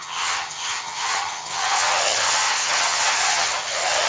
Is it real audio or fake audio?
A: fake